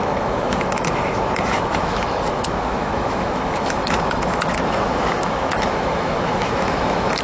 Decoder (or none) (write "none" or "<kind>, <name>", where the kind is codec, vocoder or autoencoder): autoencoder, DAC-VAE